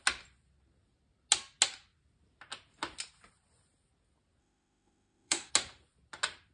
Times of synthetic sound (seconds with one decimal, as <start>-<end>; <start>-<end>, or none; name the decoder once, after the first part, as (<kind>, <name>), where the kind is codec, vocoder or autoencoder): 4.4-5.5 (autoencoder, DAC-VAE)